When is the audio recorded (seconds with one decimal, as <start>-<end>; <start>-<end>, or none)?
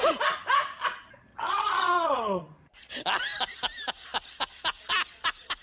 0.0-1.3; 2.4-5.6